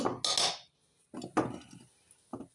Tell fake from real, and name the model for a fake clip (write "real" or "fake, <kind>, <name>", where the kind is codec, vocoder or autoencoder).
real